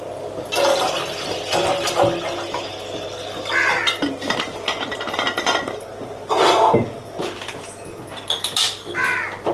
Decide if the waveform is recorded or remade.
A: recorded